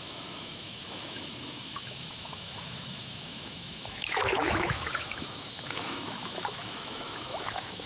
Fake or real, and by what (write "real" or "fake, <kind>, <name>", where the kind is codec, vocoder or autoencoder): fake, autoencoder, DAC-VAE